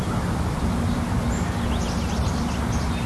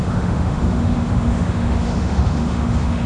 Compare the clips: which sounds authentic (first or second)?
first